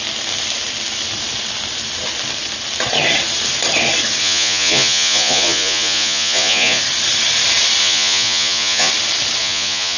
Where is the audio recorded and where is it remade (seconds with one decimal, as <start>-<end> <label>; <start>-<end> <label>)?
0.0-4.2 recorded; 4.2-6.8 remade; 6.8-7.8 recorded; 7.8-8.9 remade; 8.9-9.4 recorded; 9.4-10.0 remade